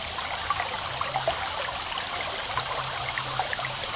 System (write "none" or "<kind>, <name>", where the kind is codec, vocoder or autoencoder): none